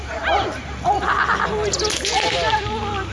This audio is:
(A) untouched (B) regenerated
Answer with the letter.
A